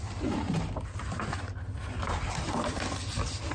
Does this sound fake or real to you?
fake